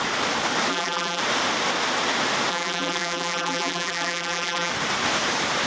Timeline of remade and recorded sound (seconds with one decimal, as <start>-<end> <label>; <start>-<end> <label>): 0.0-0.7 recorded; 0.7-1.2 remade; 1.2-2.5 recorded; 2.5-4.7 remade; 4.7-5.7 recorded